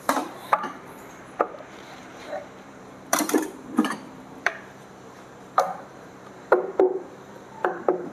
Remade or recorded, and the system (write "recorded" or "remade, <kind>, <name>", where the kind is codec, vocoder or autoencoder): remade, vocoder, BigVGAN v2